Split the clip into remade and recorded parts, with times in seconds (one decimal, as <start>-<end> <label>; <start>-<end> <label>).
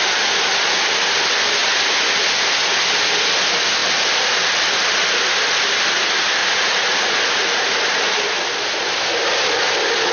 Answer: 0.0-6.4 recorded; 6.4-7.2 remade; 7.2-10.1 recorded